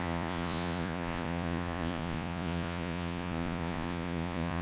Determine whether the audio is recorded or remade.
remade